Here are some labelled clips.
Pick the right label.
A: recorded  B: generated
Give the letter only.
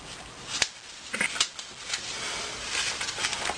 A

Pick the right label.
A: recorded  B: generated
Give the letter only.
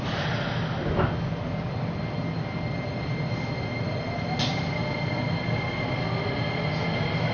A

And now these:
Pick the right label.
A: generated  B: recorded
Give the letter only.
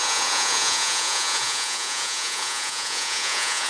A